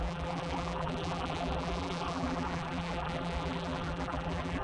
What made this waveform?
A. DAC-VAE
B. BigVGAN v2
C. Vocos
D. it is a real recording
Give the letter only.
B